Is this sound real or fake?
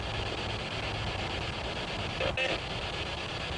real